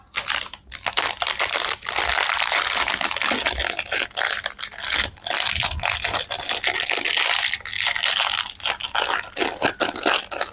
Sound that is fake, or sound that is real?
real